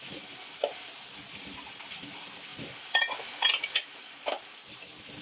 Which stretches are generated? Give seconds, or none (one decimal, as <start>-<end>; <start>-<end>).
none

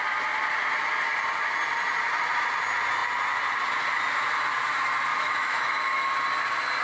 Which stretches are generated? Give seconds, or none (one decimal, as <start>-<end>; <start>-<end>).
5.1-6.1

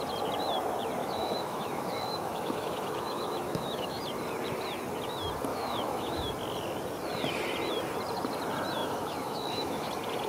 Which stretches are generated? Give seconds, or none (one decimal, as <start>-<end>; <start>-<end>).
1.0-4.0; 5.5-6.3; 8.8-9.9

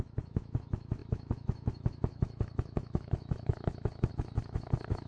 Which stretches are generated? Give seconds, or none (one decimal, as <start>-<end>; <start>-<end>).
0.0-5.1

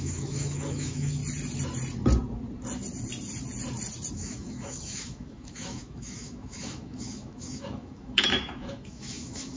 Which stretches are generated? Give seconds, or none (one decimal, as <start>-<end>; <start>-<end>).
0.0-1.2; 4.1-9.6

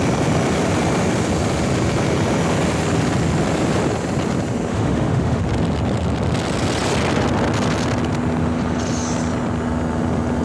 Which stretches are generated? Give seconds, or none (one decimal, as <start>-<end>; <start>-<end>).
4.7-5.4

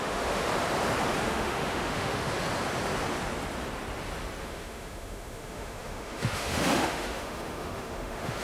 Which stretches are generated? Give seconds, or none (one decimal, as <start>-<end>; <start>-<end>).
0.0-0.5; 1.2-2.3; 4.4-8.4

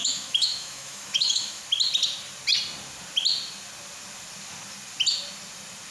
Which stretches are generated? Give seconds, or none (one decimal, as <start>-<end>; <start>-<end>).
0.0-1.6